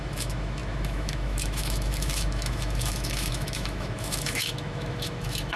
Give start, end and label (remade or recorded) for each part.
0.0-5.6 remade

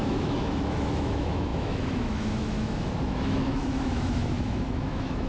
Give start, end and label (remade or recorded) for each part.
0.0-5.3 remade

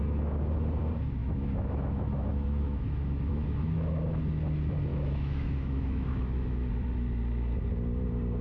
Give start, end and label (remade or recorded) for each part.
0.0-1.2 recorded; 1.2-4.2 remade; 4.2-4.9 recorded; 4.9-6.7 remade; 6.7-8.4 recorded

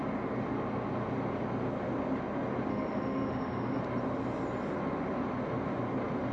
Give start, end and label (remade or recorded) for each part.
0.0-2.7 recorded; 2.7-3.8 remade; 3.8-6.3 recorded

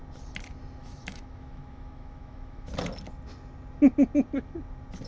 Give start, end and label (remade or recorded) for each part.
0.0-0.8 recorded; 0.8-2.7 remade; 2.7-5.1 recorded

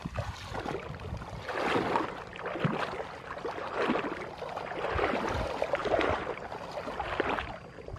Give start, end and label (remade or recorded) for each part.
0.0-8.0 recorded